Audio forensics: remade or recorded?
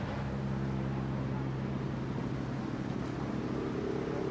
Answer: recorded